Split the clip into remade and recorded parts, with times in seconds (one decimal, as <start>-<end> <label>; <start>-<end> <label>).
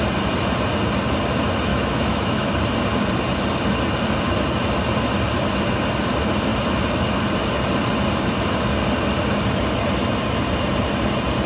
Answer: 0.0-1.7 recorded; 1.7-2.5 remade; 2.5-11.5 recorded